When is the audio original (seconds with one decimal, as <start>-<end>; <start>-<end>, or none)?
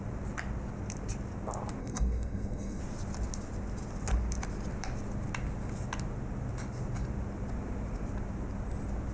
0.0-1.8; 2.8-9.1